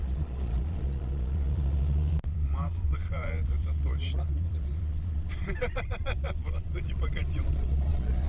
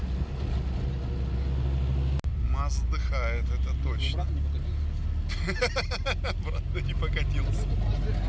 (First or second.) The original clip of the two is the second